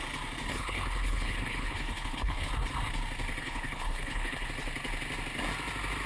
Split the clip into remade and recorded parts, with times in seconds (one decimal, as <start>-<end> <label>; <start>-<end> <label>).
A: 0.0-0.5 recorded; 0.5-2.5 remade; 2.5-3.4 recorded; 3.4-4.5 remade; 4.5-6.1 recorded